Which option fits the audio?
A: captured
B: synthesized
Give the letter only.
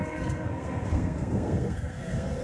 B